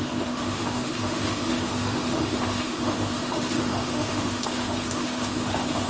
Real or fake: fake